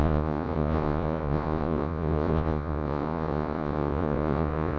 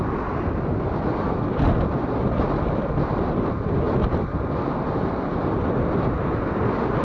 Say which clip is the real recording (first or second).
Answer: second